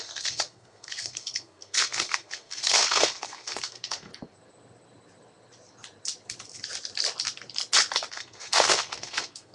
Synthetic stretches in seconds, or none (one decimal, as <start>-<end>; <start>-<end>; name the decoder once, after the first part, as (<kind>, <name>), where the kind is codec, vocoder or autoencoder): 0.0-4.1 (codec, SNAC); 8.1-9.5